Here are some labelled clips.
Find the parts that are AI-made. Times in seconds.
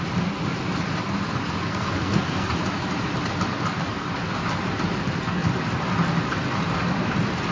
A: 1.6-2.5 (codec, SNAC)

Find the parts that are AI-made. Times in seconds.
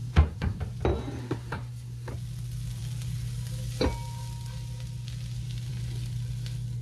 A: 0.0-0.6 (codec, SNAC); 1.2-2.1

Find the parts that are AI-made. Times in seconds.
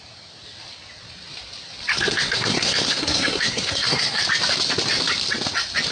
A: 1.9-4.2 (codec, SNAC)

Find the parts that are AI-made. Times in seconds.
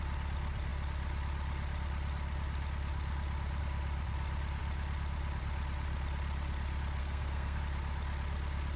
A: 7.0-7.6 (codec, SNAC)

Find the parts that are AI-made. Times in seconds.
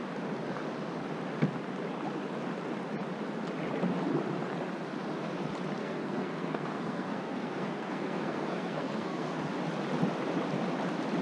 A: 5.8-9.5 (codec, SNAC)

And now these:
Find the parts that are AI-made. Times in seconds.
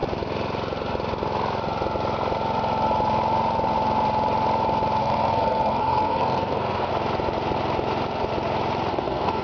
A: 5.0-6.9 (codec, SNAC); 8.9-9.4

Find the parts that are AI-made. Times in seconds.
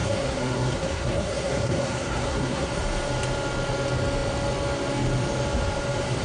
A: 0.0-2.7 (codec, SNAC)